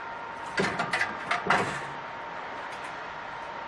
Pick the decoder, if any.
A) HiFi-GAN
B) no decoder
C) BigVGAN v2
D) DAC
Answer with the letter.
B